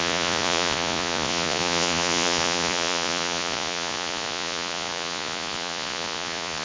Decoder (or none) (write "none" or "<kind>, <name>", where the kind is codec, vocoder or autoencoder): vocoder, Vocos